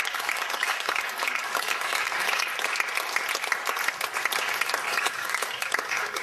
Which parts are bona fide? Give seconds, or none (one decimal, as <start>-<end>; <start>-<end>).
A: 2.5-4.8